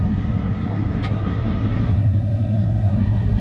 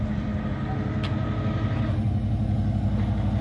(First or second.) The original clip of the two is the second